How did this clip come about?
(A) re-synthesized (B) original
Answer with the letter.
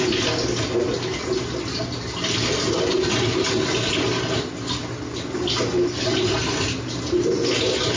B